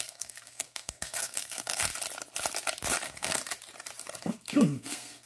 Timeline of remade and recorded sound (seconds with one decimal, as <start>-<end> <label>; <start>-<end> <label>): 0.0-1.9 remade; 1.9-3.0 recorded; 3.0-3.4 remade; 3.4-4.2 recorded; 4.2-5.3 remade